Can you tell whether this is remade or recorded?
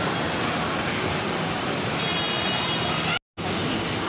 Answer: recorded